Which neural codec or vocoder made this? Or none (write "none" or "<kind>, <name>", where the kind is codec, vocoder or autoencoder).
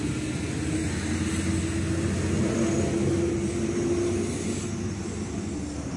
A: none